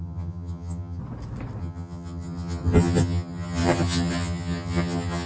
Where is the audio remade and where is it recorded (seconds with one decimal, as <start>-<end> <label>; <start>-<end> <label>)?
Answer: 0.0-1.0 remade; 1.0-1.6 recorded; 1.6-5.3 remade